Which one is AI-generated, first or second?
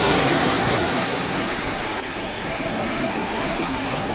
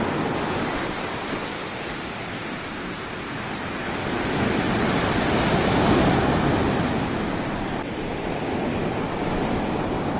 first